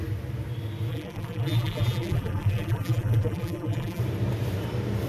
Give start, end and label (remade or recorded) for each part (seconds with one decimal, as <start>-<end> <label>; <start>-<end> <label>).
0.0-0.9 recorded; 0.9-4.0 remade; 4.0-5.1 recorded